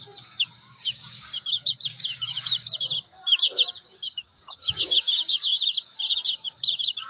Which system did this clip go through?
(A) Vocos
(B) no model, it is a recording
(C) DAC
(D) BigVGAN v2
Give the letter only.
C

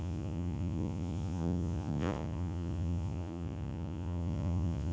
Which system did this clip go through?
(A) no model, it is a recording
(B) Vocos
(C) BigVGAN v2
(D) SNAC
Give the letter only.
B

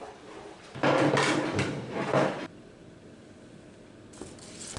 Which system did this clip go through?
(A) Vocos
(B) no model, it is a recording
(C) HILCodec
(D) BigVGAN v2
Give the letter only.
B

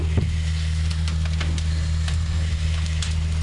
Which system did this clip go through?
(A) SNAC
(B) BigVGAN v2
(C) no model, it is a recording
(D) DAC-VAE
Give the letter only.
C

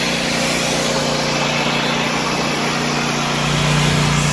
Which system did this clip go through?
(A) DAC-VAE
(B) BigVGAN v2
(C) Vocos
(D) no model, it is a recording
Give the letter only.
D